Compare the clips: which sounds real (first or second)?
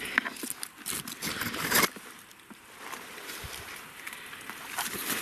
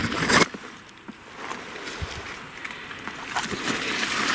second